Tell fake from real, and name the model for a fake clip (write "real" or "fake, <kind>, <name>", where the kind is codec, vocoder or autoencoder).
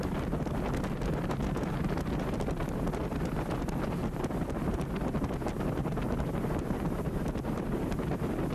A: real